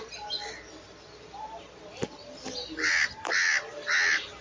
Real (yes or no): yes